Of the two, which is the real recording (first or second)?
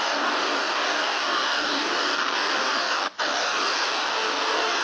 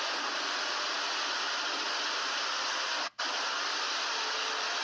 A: second